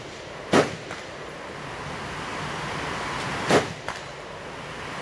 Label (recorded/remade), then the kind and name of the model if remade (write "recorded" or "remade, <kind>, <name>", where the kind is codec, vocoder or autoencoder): recorded